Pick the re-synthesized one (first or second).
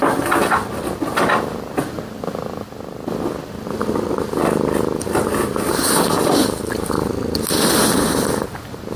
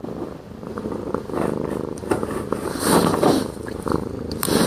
second